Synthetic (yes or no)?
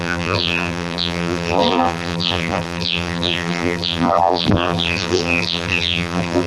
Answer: yes